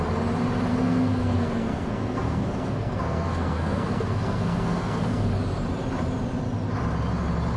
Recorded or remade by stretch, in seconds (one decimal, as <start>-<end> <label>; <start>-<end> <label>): 0.0-0.7 recorded; 0.7-5.3 remade; 5.3-7.6 recorded